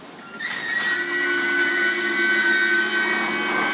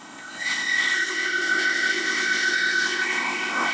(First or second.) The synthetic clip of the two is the second